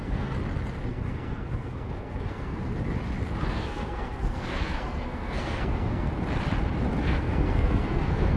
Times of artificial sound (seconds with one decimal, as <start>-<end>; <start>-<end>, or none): 0.0-0.4; 0.9-2.7; 3.5-6.1; 7.0-8.4